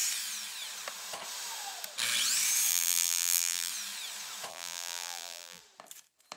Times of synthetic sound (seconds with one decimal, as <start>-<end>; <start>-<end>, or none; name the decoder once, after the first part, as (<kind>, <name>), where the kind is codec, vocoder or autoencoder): 2.7-3.7 (vocoder, BigVGAN v2); 4.5-5.6